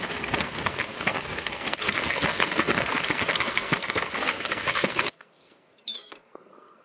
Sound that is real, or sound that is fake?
fake